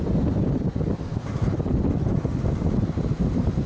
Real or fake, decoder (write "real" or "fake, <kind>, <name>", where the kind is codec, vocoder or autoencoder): real